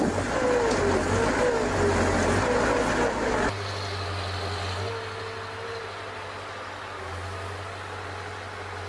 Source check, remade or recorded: recorded